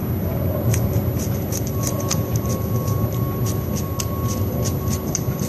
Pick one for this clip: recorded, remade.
recorded